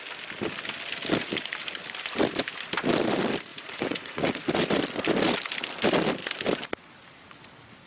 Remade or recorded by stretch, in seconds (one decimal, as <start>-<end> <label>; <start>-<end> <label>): 0.0-3.5 recorded; 3.5-4.4 remade; 4.4-7.9 recorded